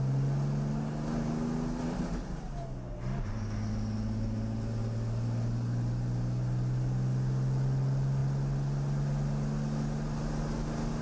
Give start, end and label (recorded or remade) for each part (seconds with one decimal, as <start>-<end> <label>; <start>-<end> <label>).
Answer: 0.0-11.0 recorded